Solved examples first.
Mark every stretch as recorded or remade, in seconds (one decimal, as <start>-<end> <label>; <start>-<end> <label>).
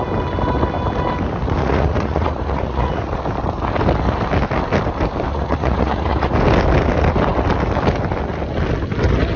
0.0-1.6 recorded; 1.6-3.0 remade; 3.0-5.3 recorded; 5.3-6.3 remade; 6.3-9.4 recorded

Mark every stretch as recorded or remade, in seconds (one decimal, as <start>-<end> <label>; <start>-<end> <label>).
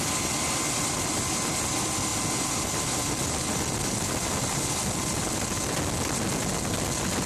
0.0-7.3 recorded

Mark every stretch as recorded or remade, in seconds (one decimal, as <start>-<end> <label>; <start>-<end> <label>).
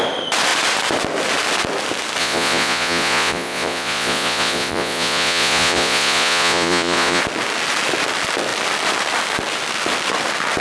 0.0-2.2 recorded; 2.2-7.2 remade; 7.2-10.6 recorded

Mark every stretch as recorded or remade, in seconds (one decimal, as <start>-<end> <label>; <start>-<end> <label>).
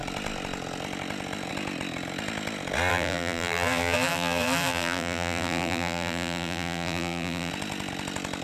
0.0-2.9 recorded; 2.9-7.5 remade; 7.5-8.4 recorded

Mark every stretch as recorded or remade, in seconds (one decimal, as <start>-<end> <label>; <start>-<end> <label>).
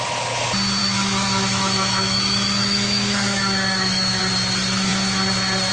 0.0-0.8 recorded; 0.8-4.2 remade; 4.2-5.7 recorded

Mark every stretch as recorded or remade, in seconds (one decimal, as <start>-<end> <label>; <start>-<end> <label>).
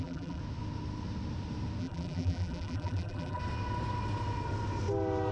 0.0-0.4 remade; 0.4-1.8 recorded; 1.8-3.4 remade; 3.4-5.3 recorded